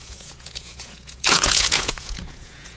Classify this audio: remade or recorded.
remade